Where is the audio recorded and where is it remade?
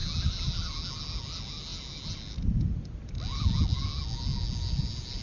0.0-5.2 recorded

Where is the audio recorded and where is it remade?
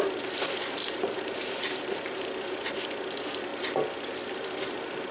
0.0-0.8 recorded; 0.8-2.7 remade; 2.7-5.1 recorded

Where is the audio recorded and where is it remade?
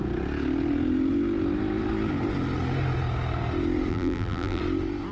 0.0-3.9 recorded; 3.9-4.6 remade; 4.6-5.1 recorded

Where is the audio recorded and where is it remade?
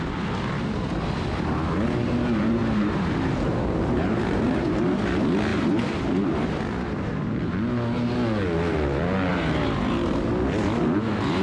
0.0-2.6 recorded; 2.6-4.8 remade; 4.8-5.5 recorded; 5.5-6.6 remade; 6.6-9.3 recorded; 9.3-10.3 remade; 10.3-11.4 recorded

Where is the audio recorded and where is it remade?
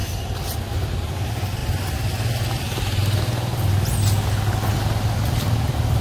0.0-6.0 recorded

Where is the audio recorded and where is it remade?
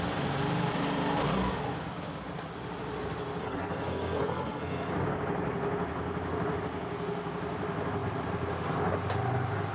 0.0-3.4 recorded; 3.4-4.9 remade; 4.9-9.7 recorded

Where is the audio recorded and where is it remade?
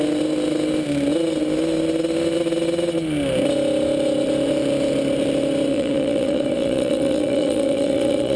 0.0-5.7 recorded; 5.7-8.4 remade